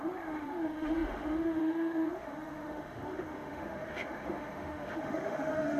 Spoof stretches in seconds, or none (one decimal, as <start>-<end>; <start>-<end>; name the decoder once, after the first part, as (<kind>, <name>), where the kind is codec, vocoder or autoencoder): 0.0-5.8 (autoencoder, DAC-VAE)